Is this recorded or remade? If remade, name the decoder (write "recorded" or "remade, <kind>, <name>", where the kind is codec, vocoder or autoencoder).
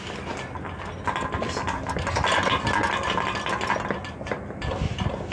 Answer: recorded